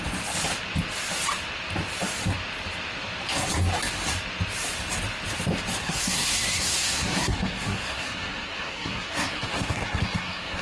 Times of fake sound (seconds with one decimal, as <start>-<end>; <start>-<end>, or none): 5.8-10.6